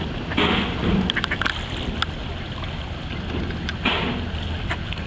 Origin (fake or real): real